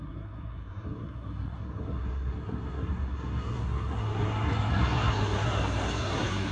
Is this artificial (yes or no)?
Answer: yes